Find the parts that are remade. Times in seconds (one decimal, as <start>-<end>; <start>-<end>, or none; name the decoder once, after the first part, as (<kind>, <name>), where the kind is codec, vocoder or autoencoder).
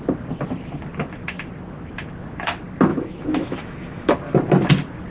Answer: 2.9-4.1 (autoencoder, DAC-VAE)